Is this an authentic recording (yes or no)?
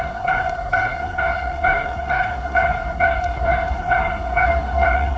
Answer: no